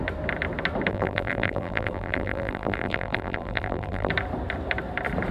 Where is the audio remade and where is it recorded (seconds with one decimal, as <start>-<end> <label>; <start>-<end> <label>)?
0.0-0.9 recorded; 0.9-4.1 remade; 4.1-5.3 recorded